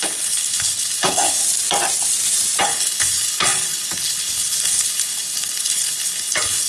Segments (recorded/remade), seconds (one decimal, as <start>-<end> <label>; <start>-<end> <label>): 0.0-1.4 remade; 1.4-2.6 recorded; 2.6-6.7 remade